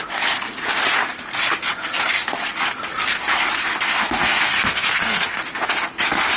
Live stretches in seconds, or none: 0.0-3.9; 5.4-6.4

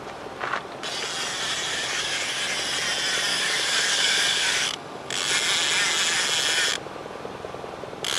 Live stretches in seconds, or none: 0.0-1.7; 2.4-3.3; 5.1-8.2